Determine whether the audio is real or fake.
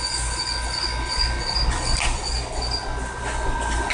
real